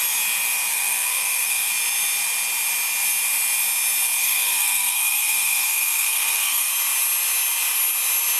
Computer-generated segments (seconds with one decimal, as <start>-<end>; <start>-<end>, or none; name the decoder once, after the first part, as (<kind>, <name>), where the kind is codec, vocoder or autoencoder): 0.7-1.7 (codec, SNAC); 4.2-6.7